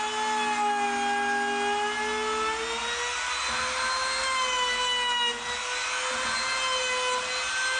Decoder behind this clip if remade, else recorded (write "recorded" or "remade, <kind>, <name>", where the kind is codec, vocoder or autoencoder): recorded